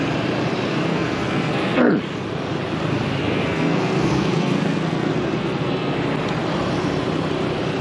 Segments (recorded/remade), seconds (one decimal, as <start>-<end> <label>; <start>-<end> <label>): 0.0-0.8 recorded; 0.8-1.9 remade; 1.9-3.2 recorded; 3.2-6.0 remade; 6.0-7.8 recorded